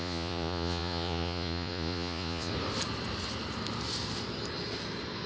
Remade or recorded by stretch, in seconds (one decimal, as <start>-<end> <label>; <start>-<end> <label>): 0.0-2.5 remade; 2.5-5.3 recorded